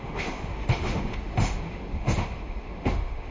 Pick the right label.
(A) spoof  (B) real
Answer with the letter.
A